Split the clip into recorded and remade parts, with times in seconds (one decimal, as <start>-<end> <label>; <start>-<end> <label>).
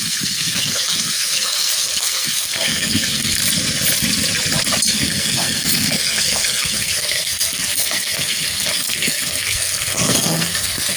0.0-3.4 remade; 3.4-4.9 recorded; 4.9-11.0 remade